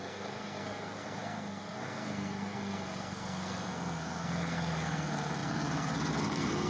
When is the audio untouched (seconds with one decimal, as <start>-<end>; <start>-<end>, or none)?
none